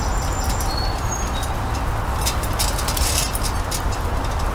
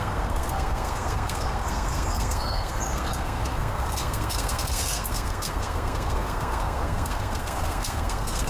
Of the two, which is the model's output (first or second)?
second